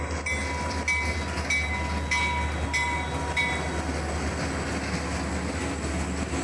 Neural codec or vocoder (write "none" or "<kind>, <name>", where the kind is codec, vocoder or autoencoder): none